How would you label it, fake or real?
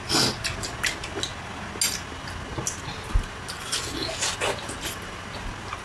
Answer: real